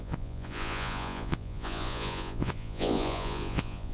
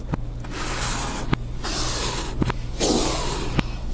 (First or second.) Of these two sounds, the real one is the second